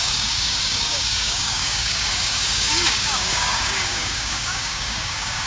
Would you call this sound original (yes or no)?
no